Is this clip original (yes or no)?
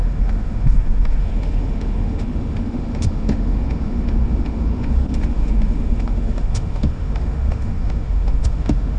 no